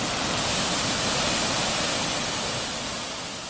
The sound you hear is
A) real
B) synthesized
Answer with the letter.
A